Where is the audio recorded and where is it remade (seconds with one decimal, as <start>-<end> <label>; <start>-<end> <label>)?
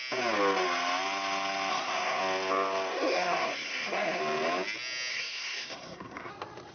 0.0-1.7 recorded; 1.7-2.2 remade; 2.2-2.9 recorded; 2.9-4.2 remade; 4.2-5.1 recorded; 5.1-6.3 remade; 6.3-6.7 recorded